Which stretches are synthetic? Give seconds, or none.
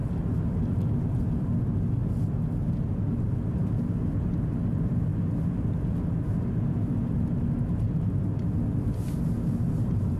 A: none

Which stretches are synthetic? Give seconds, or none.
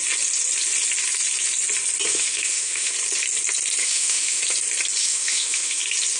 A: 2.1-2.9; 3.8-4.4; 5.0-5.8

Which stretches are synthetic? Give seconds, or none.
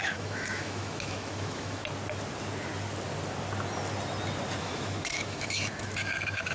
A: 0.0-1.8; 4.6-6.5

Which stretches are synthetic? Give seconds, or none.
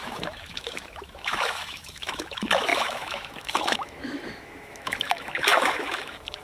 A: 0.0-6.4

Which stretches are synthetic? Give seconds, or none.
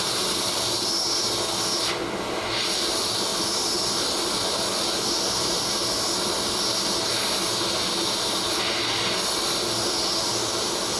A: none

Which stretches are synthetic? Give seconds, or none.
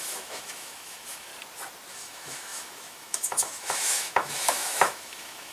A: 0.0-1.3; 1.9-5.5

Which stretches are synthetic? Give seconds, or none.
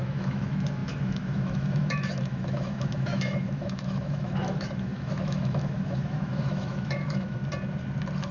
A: 0.0-7.4